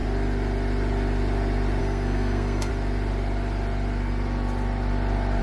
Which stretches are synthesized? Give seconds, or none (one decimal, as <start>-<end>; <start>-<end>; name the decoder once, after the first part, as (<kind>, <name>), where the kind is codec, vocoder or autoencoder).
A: 1.8-2.7 (codec, SNAC)